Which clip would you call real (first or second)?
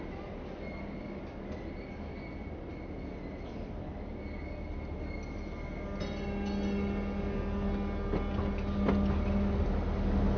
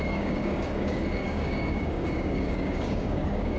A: first